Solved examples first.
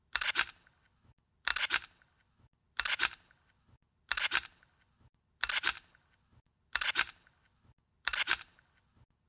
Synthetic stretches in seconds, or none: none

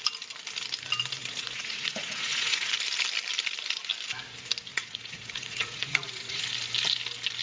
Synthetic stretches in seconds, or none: 1.2-2.7 (vocoder, Vocos); 4.7-6.4

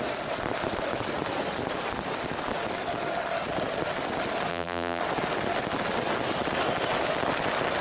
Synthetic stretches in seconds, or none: 4.5-5.0 (vocoder, BigVGAN v2)

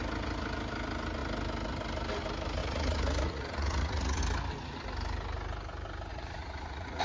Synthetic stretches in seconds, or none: 2.6-4.2 (vocoder, Vocos); 6.1-7.0

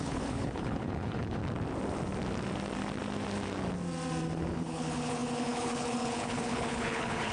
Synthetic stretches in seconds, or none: 0.0-1.4 (codec, HILCodec); 4.5-7.3

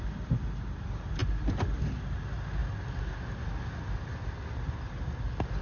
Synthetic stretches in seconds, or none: none